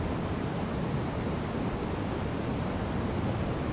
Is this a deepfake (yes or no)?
no